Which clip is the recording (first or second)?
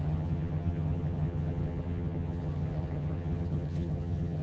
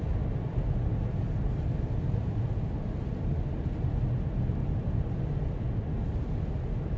second